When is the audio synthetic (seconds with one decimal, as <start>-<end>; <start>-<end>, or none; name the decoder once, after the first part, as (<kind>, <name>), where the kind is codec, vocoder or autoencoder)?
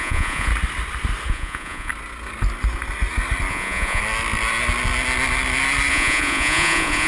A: 0.0-0.5 (vocoder, Vocos); 1.3-1.9; 3.5-4.0; 5.9-7.1